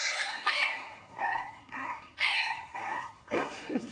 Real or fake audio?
fake